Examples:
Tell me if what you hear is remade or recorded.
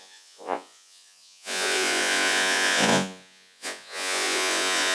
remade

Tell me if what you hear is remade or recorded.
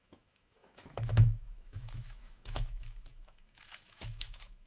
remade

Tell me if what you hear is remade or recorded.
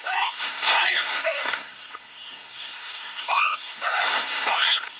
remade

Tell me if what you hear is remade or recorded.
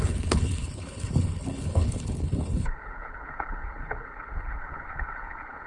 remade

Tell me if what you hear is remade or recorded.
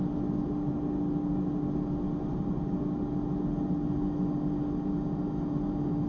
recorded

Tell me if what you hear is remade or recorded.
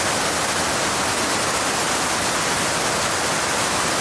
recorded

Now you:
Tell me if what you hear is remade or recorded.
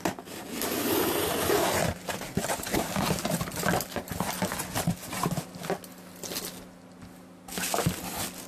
recorded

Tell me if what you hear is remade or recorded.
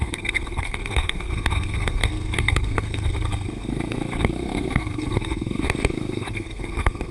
remade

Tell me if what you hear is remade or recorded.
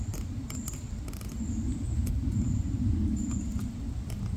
recorded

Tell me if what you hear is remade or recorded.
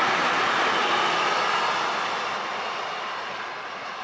recorded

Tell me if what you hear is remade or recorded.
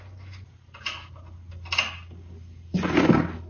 recorded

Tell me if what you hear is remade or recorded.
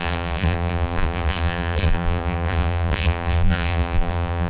remade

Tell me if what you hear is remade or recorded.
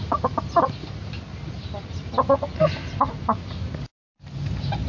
recorded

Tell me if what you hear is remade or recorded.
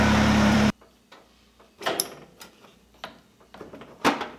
remade